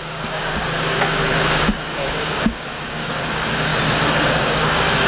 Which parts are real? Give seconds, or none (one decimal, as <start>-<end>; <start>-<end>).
3.7-4.3